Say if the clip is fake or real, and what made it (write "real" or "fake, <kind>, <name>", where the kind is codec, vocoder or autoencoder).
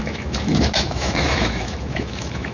fake, autoencoder, DAC-VAE